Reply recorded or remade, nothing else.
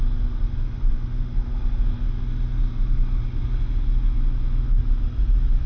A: recorded